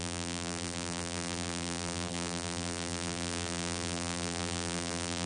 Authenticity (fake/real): fake